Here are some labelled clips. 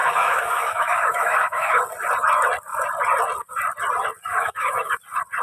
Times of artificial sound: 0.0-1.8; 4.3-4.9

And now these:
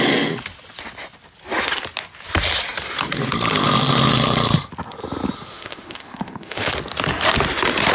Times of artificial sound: 5.5-6.7